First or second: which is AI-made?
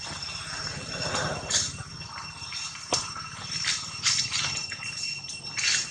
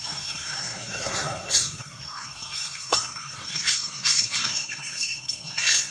second